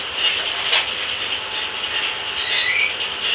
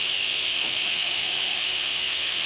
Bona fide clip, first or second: first